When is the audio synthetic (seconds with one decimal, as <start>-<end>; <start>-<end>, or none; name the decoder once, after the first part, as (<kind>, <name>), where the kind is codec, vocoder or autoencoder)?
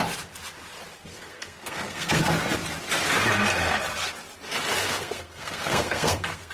1.1-2.2 (codec, SNAC); 4.8-6.5